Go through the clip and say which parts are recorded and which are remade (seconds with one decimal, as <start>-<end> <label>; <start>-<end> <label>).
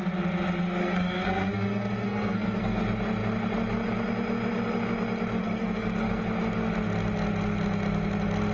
0.0-0.8 recorded; 0.8-2.8 remade; 2.8-5.4 recorded; 5.4-6.2 remade; 6.2-8.5 recorded